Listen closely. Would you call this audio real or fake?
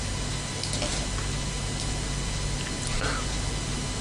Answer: real